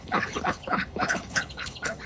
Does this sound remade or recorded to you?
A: remade